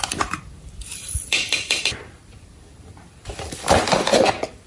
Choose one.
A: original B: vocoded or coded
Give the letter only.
B